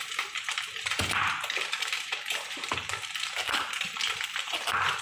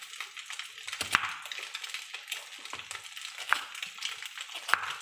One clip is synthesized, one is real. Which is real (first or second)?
second